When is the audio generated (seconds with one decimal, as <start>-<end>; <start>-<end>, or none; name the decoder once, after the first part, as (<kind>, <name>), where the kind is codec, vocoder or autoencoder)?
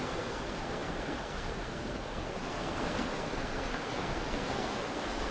0.0-5.3 (codec, SNAC)